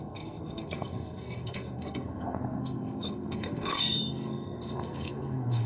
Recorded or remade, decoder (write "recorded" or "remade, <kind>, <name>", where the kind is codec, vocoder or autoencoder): remade, codec, SNAC